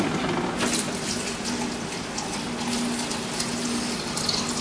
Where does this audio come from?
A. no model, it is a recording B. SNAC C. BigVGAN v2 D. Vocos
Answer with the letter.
A